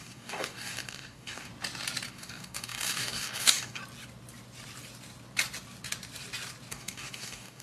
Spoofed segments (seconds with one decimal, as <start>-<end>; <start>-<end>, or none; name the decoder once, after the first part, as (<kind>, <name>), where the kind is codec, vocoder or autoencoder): 0.0-1.5 (codec, DAC); 2.1-3.8; 6.7-7.6